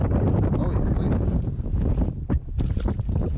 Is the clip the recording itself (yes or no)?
yes